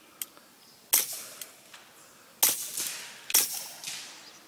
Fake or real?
real